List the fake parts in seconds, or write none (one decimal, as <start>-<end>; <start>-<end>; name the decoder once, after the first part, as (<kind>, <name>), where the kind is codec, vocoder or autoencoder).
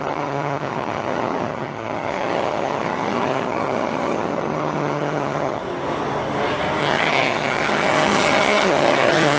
0.0-5.6 (vocoder, HiFi-GAN); 6.8-9.4